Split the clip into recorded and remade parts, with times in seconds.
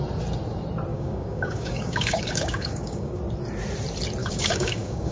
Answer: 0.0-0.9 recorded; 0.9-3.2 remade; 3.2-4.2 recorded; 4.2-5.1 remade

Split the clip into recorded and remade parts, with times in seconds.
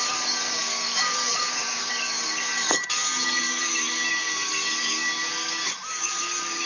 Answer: 0.0-6.7 remade